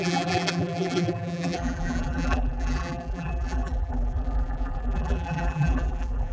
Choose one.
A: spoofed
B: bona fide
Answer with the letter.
A